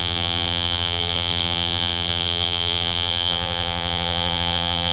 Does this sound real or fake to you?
fake